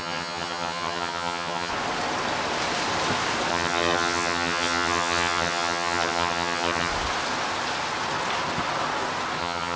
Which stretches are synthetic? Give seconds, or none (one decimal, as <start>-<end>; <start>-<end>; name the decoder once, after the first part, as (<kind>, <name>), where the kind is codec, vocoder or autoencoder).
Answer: 0.0-1.7 (vocoder, HiFi-GAN); 3.5-6.9; 9.4-9.8